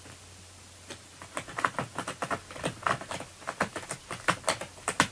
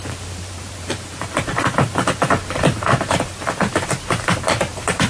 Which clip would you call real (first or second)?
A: first